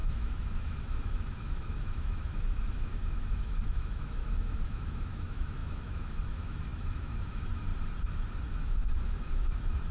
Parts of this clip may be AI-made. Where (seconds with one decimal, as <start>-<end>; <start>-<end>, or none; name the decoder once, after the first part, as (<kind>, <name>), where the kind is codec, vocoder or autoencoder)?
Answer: 0.0-7.7 (autoencoder, DAC-VAE); 8.6-9.9